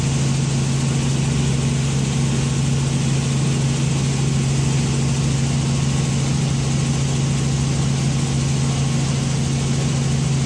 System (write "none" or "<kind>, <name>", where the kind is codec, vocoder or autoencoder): none